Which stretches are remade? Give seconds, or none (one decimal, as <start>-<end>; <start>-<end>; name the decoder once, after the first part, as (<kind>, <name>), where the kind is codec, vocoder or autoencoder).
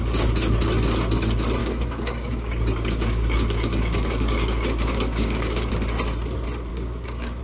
1.6-5.7 (codec, DAC); 6.7-7.4